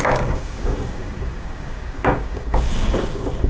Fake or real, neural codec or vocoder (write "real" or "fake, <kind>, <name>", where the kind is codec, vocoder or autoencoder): fake, codec, DAC